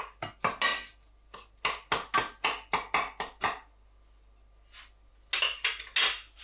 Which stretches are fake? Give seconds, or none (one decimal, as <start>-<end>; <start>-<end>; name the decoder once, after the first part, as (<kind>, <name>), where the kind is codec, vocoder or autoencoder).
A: none